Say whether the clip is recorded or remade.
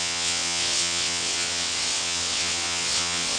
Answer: remade